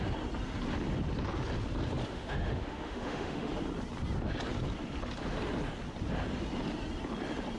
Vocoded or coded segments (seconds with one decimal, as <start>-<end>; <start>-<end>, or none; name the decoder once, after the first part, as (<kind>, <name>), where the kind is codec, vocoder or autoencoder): 2.1-3.5 (autoencoder, DAC-VAE)